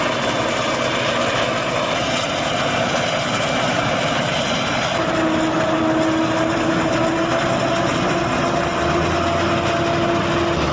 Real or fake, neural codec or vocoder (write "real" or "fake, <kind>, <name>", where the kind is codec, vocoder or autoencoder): real